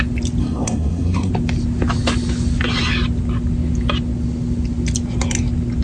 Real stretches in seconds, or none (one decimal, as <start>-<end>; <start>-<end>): 0.0-0.4; 1.3-5.8